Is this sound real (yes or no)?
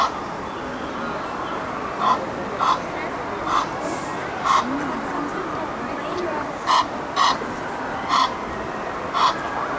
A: yes